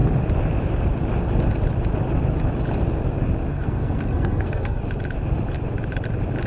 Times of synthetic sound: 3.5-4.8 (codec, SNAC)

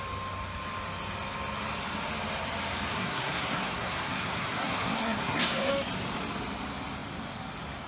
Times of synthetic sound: 2.9-5.7 (codec, SNAC)